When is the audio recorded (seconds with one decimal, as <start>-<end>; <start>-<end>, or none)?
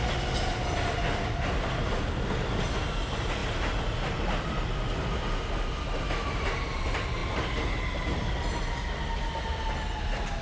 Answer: 0.0-10.4